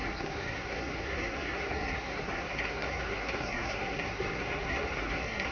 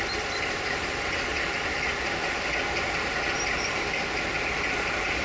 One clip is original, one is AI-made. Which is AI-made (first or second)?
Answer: first